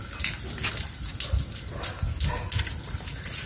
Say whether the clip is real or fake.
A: real